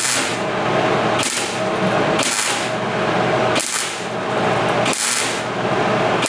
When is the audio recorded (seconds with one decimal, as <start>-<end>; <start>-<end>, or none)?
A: 0.0-6.3